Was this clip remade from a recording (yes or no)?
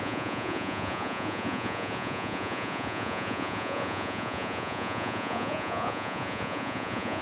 yes